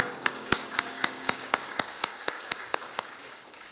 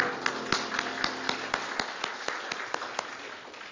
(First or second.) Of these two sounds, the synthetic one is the first